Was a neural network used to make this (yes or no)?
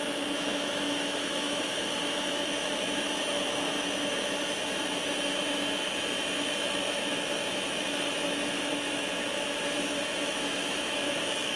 yes